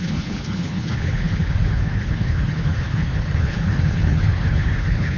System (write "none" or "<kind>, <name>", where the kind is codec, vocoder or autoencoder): codec, HILCodec